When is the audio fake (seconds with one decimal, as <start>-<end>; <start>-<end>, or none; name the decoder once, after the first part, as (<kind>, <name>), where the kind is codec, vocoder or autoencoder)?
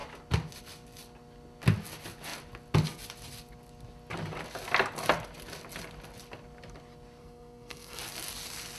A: 7.2-8.0 (codec, SNAC)